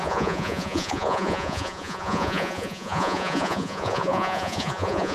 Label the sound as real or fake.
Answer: fake